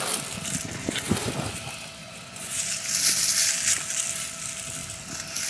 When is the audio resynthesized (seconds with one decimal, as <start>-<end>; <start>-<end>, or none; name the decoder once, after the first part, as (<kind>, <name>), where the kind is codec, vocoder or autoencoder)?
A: 0.8-1.3 (vocoder, Vocos); 2.0-2.7